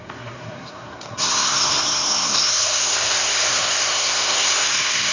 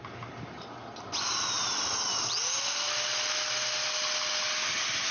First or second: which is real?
second